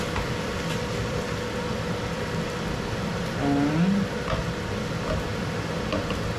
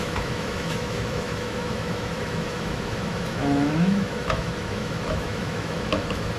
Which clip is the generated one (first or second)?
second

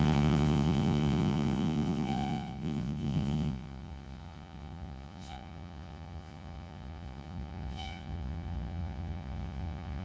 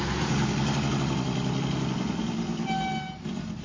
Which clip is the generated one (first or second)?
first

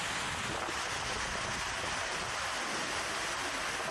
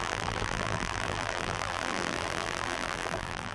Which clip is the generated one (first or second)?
second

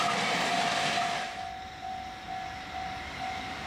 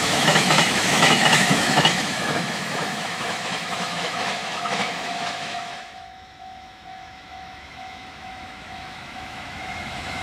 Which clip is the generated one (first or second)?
second